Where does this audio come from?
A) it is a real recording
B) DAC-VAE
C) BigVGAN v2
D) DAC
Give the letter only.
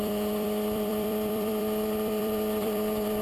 C